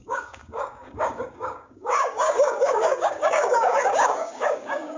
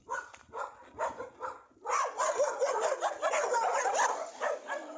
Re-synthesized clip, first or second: first